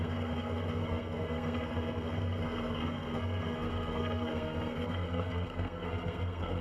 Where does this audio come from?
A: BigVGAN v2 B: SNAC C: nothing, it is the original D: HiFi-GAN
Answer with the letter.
B